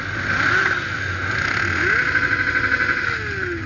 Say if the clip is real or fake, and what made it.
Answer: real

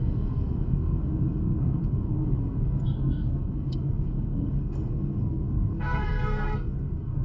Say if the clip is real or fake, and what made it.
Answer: fake, codec, SNAC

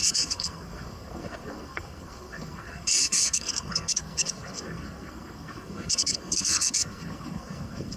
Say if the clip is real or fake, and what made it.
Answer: fake, codec, SNAC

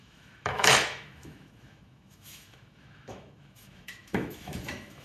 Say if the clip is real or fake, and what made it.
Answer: fake, autoencoder, DAC-VAE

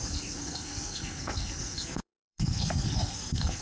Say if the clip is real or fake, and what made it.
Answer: fake, codec, SNAC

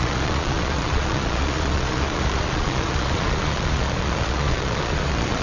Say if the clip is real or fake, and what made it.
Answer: fake, vocoder, Vocos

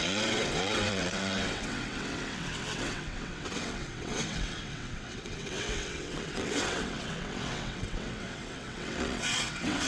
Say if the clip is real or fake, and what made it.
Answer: fake, vocoder, WaveNeXt